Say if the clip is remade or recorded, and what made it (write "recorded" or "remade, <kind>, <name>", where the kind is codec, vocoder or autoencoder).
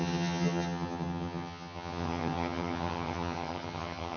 remade, vocoder, HiFi-GAN